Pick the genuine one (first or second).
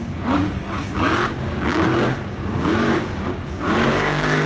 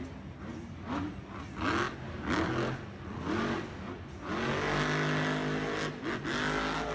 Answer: second